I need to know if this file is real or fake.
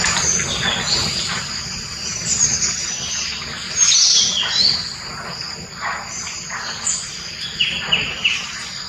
real